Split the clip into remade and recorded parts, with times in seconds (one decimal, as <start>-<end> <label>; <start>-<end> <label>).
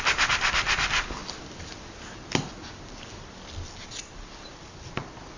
0.0-5.4 recorded